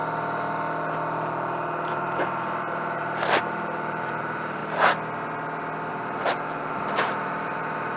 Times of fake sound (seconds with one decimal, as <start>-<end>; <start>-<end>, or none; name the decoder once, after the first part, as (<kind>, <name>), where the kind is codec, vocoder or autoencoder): 1.9-4.6 (vocoder, BigVGAN v2); 5.9-8.0